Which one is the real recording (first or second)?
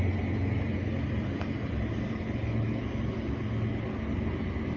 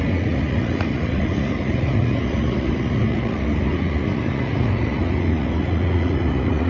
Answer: first